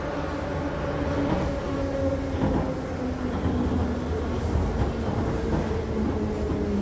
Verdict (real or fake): real